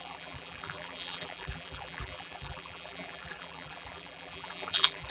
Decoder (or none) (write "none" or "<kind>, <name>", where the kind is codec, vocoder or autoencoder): vocoder, BigVGAN v2